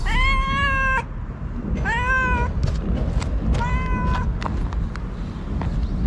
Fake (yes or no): no